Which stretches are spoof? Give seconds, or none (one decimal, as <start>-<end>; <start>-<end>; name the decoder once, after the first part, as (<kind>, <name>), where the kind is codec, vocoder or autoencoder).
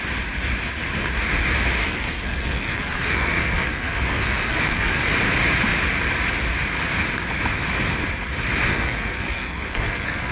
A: 1.8-5.1 (codec, SNAC); 8.7-10.3